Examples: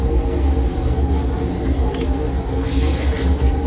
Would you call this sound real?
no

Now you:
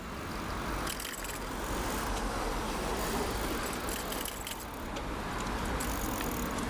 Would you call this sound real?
yes